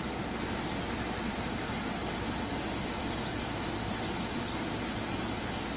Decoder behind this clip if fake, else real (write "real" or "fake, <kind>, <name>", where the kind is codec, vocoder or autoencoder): fake, vocoder, BigVGAN v2